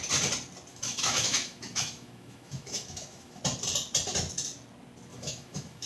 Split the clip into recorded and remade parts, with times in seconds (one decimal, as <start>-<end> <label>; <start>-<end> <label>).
0.0-0.7 recorded; 0.7-3.4 remade; 3.4-5.1 recorded; 5.1-5.9 remade